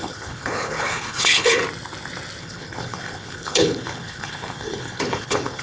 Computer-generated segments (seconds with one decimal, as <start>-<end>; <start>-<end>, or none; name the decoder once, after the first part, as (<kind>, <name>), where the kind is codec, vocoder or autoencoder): 0.0-1.6 (codec, HILCodec); 2.4-5.6